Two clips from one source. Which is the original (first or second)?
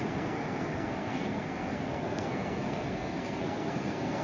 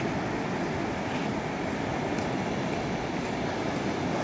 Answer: second